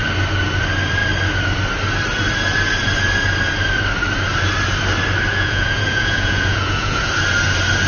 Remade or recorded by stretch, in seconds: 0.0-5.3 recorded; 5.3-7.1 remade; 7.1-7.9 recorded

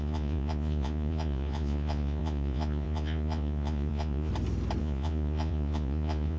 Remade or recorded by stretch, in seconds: 0.0-4.3 remade; 4.3-4.8 recorded; 4.8-6.4 remade

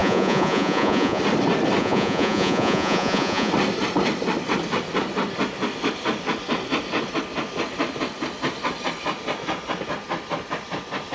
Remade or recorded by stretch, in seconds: 0.0-1.2 remade; 1.2-1.8 recorded; 1.8-3.5 remade; 3.5-11.1 recorded